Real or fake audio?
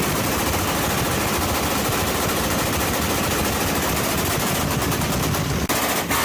real